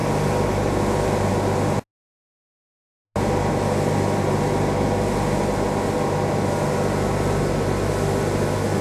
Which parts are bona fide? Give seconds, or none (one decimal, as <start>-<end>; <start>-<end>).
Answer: 0.0-8.8